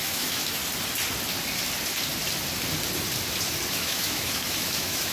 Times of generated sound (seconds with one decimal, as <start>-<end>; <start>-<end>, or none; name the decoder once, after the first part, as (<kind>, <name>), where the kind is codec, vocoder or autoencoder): 0.0-0.6 (autoencoder, DAC-VAE); 3.7-5.1